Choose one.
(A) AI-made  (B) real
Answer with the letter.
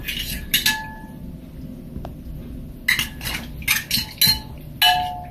B